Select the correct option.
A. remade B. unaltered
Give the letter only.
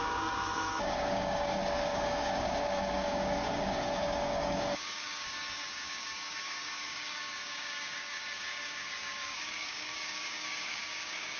A